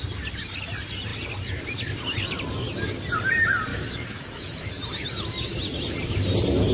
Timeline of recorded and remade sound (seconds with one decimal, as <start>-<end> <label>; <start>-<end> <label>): 0.0-3.7 recorded; 3.7-4.7 remade; 4.7-6.7 recorded